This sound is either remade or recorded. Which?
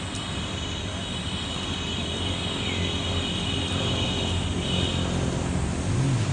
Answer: recorded